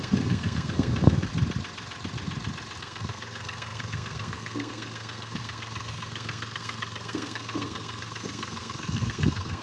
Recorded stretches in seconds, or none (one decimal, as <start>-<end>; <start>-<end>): 1.3-2.8